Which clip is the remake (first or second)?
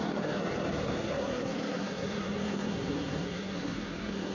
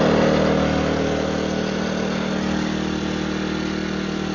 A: first